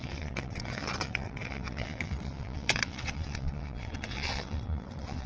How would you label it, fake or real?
fake